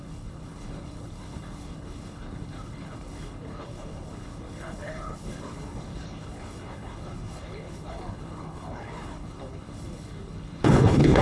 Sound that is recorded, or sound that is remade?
remade